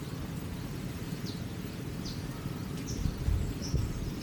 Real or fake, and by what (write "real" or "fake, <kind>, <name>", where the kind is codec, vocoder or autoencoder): fake, vocoder, BigVGAN v2